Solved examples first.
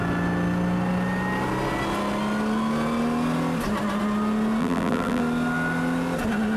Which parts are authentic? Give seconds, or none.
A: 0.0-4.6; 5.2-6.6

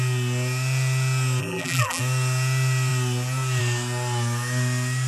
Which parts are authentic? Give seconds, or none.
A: 0.0-1.4; 2.0-5.1

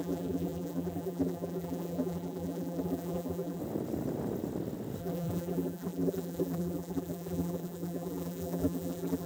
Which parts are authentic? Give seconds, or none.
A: 3.6-5.0

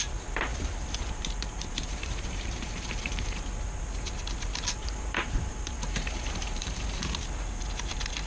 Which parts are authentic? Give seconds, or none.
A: 0.0-0.5; 3.3-4.8; 7.1-8.3